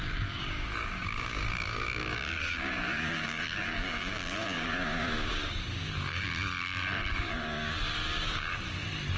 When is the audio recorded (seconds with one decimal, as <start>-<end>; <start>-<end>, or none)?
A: 6.3-7.2; 8.5-9.2